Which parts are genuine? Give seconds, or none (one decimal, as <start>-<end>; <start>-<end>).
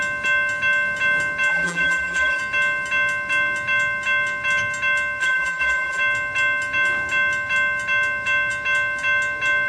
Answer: 0.0-1.5; 2.4-5.2; 6.0-9.7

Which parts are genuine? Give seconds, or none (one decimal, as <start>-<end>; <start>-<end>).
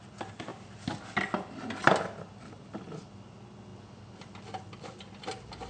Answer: 0.0-5.7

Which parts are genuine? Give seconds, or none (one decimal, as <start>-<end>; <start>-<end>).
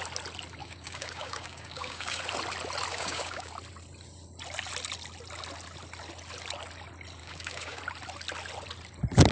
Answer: 0.0-0.6; 2.2-2.9; 3.5-7.2; 7.8-9.3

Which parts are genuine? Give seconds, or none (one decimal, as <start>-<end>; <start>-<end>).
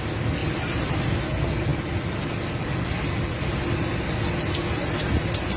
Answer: 0.0-5.6